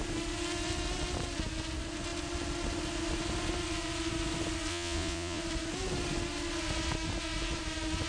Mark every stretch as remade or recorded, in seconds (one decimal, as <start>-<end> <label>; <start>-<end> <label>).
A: 0.0-4.7 recorded; 4.7-5.4 remade; 5.4-8.1 recorded